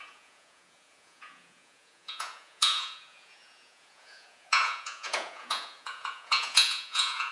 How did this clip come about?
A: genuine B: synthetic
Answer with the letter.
B